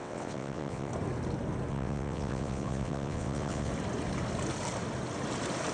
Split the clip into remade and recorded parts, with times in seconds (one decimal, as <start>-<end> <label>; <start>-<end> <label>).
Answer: 0.0-0.9 remade; 0.9-1.7 recorded; 1.7-3.7 remade; 3.7-5.7 recorded